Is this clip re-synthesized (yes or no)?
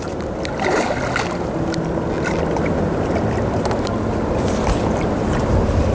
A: no